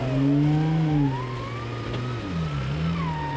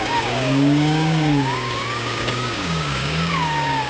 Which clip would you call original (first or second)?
first